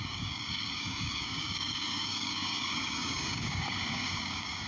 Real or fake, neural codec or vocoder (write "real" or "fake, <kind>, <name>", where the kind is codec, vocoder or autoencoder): fake, codec, DAC